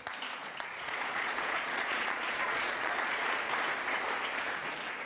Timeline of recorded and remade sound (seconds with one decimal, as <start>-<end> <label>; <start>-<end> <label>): 0.0-0.4 recorded; 0.4-3.5 remade; 3.5-5.1 recorded